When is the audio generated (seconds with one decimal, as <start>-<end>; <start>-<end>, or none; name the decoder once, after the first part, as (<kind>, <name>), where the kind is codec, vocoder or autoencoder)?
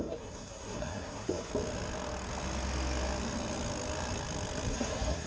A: 0.0-1.5 (codec, SNAC); 4.7-5.3